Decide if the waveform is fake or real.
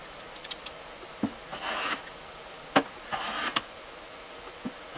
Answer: real